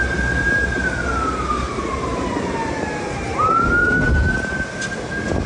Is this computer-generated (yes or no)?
no